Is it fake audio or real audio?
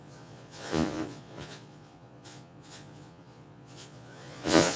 fake